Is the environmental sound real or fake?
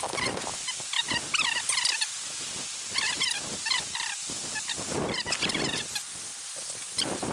real